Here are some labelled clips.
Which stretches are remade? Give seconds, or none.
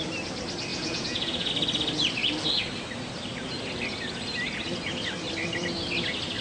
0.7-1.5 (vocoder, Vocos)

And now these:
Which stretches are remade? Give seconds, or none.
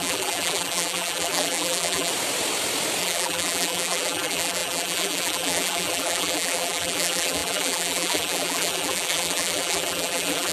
0.0-2.1 (vocoder, BigVGAN v2); 3.0-10.5